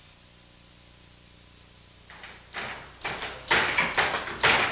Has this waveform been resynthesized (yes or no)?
no